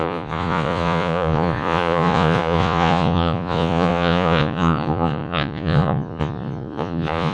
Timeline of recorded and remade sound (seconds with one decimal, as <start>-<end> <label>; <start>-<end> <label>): 0.0-7.3 remade